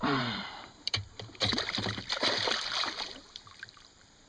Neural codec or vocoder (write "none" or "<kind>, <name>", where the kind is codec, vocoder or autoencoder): vocoder, BigVGAN v2